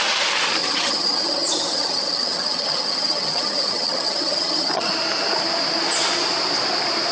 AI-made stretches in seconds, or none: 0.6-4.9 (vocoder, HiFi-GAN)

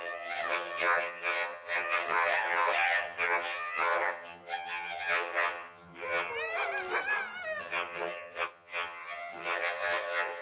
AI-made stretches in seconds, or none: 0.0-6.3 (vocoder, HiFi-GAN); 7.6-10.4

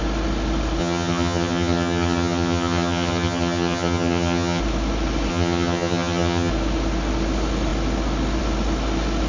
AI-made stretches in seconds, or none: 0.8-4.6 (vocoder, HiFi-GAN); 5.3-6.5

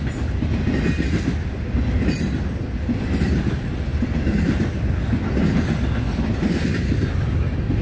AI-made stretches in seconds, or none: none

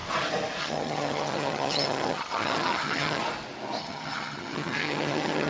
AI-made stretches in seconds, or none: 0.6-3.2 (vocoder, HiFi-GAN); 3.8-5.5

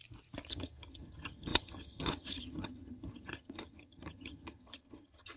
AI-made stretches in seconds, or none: 0.5-5.4 (vocoder, HiFi-GAN)

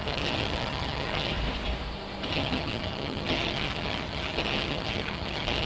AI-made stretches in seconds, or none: 0.0-1.3 (vocoder, HiFi-GAN); 2.3-5.7